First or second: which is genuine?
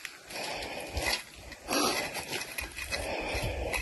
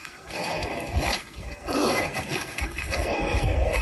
first